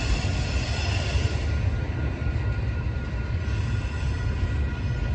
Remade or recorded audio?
recorded